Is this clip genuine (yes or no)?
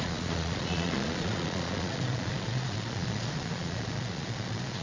no